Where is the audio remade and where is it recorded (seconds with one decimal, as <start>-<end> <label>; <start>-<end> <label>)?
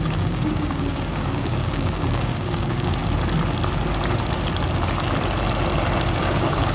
0.0-3.0 remade; 3.0-6.2 recorded; 6.2-6.7 remade